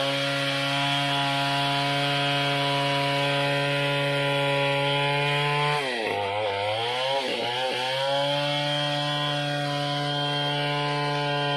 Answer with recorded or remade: recorded